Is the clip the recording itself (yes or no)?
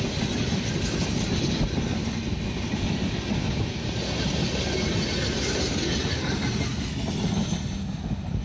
yes